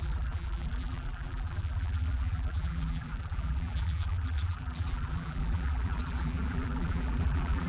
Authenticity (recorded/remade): remade